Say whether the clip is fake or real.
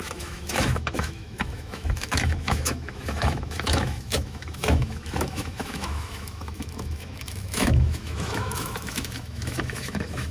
fake